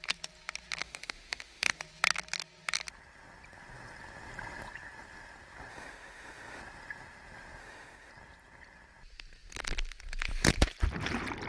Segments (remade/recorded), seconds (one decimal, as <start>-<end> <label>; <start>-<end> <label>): 0.0-0.8 recorded; 0.8-1.8 remade; 1.8-5.7 recorded; 5.7-6.6 remade; 6.6-7.6 recorded; 7.6-8.1 remade; 8.1-11.5 recorded